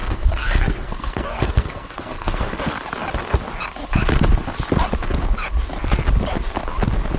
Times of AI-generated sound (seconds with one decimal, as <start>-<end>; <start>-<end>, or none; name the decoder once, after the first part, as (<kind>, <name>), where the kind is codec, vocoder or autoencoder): 0.0-2.6 (codec, SNAC)